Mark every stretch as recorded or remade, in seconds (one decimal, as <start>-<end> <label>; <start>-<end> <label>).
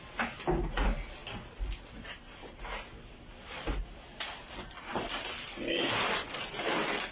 0.0-7.1 recorded